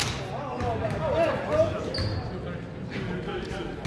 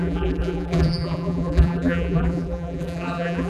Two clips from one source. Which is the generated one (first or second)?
second